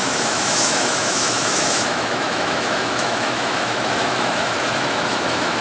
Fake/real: fake